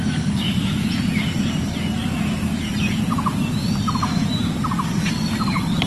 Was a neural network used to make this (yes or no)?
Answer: yes